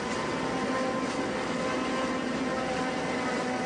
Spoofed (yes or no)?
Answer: no